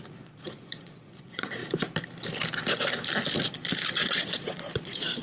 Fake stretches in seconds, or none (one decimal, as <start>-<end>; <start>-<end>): 0.0-1.6; 3.9-5.2